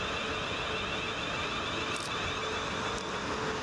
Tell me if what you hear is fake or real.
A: real